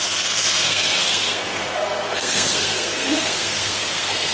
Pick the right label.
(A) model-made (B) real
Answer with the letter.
A